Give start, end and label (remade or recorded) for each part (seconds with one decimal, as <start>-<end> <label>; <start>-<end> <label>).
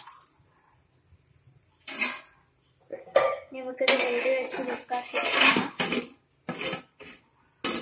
0.0-2.9 recorded; 2.9-4.0 remade; 4.0-5.3 recorded; 5.3-5.8 remade; 5.8-7.8 recorded